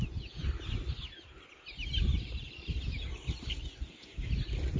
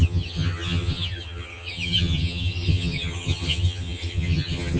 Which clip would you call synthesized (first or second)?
second